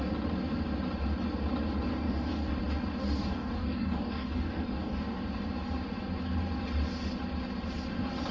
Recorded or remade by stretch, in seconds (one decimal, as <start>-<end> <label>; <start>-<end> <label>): 0.0-1.9 recorded; 1.9-2.6 remade; 2.6-3.0 recorded; 3.0-5.2 remade; 5.2-8.3 recorded